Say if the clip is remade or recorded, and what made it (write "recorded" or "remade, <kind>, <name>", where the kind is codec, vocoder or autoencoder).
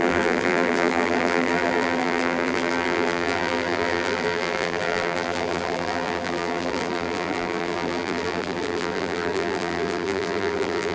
remade, vocoder, BigVGAN v2